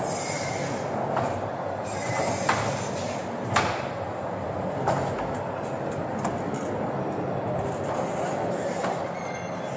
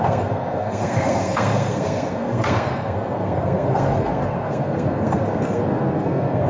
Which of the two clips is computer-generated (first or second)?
second